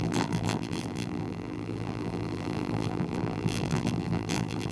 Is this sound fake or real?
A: fake